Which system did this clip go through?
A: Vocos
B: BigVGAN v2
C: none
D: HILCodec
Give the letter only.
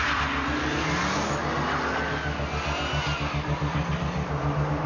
C